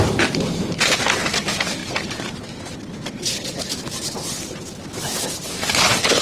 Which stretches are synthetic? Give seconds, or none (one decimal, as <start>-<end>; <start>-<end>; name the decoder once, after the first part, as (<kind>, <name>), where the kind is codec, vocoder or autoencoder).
0.0-1.8 (vocoder, BigVGAN v2); 3.2-6.2